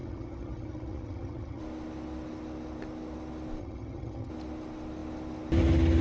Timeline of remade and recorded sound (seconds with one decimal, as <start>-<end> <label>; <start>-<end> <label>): 0.0-1.6 remade; 1.6-3.6 recorded; 3.6-4.3 remade; 4.3-6.0 recorded